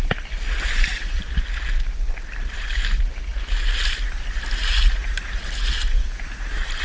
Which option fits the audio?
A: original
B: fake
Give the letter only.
A